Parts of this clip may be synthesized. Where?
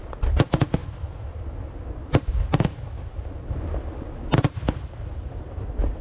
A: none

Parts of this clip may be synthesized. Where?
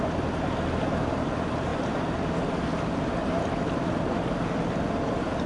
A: none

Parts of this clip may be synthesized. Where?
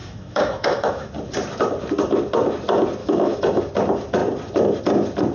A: 0.0-1.1 (autoencoder, DAC-VAE); 3.0-3.6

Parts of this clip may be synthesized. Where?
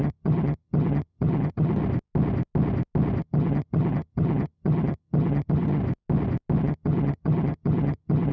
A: 0.0-1.8 (vocoder, HiFi-GAN); 3.2-5.8; 6.6-8.3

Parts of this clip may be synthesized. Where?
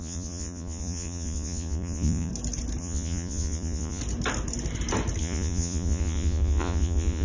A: 0.0-2.3 (vocoder, Vocos); 2.8-4.0; 5.2-7.2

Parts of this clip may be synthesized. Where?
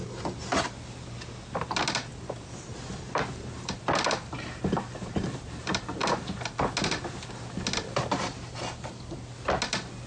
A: 2.1-3.8 (vocoder, BigVGAN v2)